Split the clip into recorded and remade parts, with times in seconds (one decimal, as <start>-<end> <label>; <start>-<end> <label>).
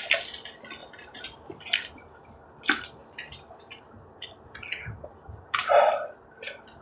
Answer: 0.0-0.8 recorded; 0.8-2.3 remade; 2.3-3.0 recorded; 3.0-5.9 remade; 5.9-6.8 recorded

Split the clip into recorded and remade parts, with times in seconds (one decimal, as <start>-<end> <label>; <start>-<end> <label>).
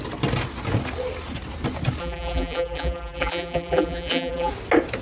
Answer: 0.0-2.0 recorded; 2.0-4.5 remade; 4.5-5.0 recorded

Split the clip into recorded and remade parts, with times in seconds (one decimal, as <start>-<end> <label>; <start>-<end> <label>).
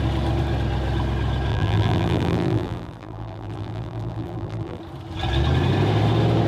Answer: 0.0-1.5 recorded; 1.5-4.8 remade; 4.8-6.5 recorded